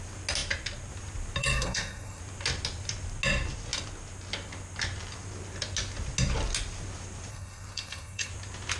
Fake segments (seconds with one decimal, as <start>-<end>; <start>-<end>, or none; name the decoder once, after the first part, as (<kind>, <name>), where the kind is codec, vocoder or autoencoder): 1.4-2.2 (codec, SNAC); 7.3-8.3